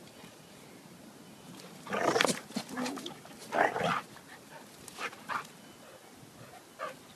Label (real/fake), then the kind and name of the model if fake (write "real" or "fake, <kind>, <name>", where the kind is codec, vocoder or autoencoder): real